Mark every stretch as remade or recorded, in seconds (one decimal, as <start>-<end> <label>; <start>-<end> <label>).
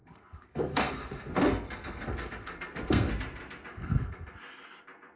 0.0-3.1 remade; 3.1-3.7 recorded; 3.7-4.3 remade; 4.3-5.2 recorded